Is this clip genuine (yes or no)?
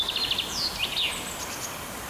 yes